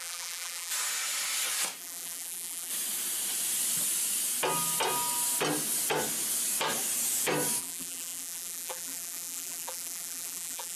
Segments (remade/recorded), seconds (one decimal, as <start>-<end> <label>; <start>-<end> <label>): 0.0-0.7 remade; 0.7-1.8 recorded; 1.8-2.7 remade; 2.7-7.6 recorded; 7.6-10.8 remade